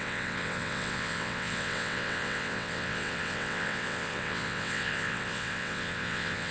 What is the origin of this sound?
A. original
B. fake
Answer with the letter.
B